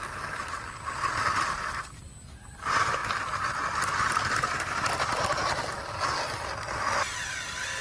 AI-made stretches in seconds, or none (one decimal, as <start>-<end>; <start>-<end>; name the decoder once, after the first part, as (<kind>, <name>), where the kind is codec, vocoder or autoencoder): 0.0-3.0 (vocoder, BigVGAN v2); 7.2-7.8